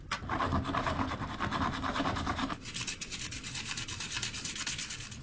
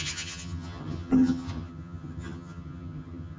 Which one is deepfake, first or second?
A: second